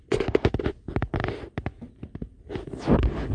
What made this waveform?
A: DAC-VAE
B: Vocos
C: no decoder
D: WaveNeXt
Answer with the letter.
C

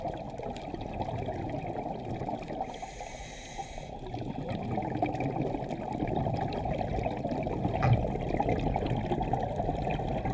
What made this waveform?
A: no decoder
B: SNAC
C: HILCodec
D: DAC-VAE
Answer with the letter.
A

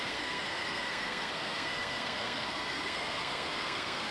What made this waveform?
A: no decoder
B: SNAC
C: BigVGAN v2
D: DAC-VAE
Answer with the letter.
B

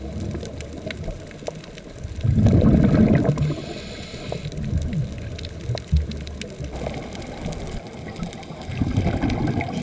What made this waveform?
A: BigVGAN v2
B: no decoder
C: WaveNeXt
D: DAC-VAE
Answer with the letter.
B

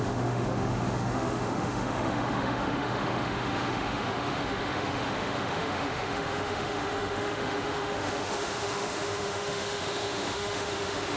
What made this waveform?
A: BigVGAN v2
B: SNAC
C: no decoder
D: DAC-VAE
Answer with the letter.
D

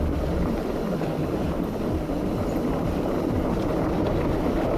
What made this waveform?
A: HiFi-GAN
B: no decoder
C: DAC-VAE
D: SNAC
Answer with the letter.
B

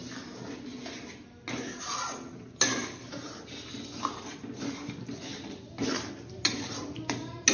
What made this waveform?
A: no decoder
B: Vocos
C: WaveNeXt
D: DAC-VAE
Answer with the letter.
A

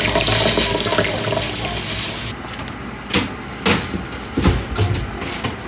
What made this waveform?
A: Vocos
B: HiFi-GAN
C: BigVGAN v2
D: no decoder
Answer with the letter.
D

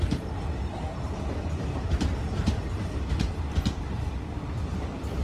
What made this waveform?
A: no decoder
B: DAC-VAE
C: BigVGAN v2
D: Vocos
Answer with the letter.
C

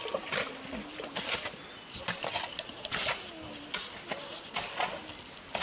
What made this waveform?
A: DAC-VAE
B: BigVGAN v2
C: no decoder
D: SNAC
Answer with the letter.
C